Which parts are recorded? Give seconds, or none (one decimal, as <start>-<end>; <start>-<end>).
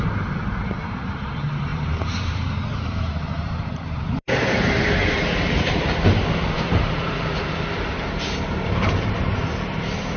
none